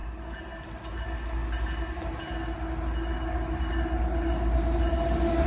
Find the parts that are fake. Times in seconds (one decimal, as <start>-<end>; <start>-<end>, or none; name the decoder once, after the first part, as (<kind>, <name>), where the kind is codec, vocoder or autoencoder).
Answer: none